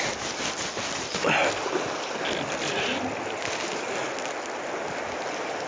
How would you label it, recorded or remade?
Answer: recorded